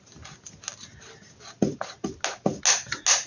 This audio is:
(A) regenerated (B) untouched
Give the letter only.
B